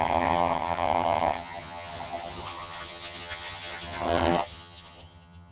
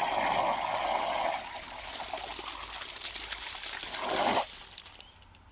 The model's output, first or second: first